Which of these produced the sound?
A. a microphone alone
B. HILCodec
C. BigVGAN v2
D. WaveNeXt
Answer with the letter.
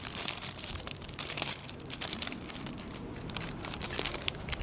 C